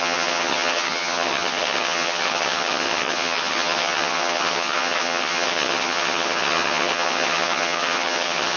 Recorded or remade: remade